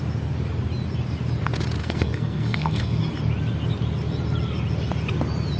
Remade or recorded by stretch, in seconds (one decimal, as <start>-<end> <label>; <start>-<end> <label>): 0.0-1.8 recorded; 1.8-3.0 remade; 3.0-5.6 recorded